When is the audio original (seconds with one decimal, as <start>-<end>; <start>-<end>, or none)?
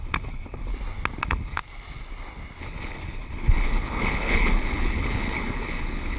0.7-1.2; 1.6-2.6